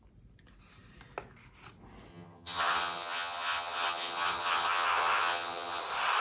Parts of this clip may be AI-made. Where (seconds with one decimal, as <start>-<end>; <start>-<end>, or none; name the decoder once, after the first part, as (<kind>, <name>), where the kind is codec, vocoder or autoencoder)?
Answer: 2.1-5.8 (vocoder, HiFi-GAN)